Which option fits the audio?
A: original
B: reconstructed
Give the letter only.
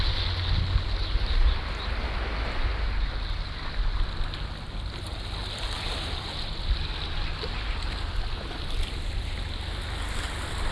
A